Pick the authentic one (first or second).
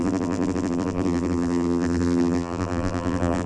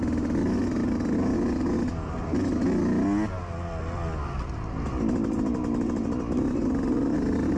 second